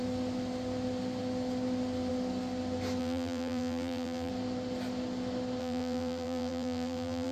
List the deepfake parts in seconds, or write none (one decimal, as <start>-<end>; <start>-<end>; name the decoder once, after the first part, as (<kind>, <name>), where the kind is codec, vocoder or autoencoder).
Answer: 3.0-4.3 (vocoder, BigVGAN v2); 5.6-7.3